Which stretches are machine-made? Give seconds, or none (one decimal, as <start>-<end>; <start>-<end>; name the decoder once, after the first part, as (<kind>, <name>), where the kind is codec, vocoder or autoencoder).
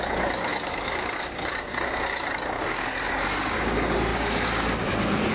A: 0.0-5.3 (codec, DAC)